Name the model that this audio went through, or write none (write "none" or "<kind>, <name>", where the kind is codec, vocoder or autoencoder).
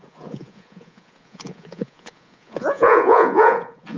vocoder, Vocos